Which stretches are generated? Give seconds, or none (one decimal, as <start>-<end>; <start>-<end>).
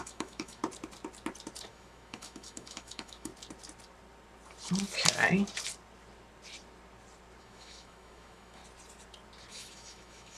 0.0-0.6; 1.7-3.3; 7.4-8.6; 9.5-10.4